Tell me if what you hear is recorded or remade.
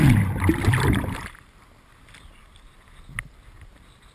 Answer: recorded